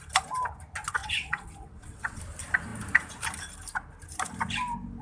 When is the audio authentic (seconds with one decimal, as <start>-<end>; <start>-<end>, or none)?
0.0-1.0; 2.2-5.0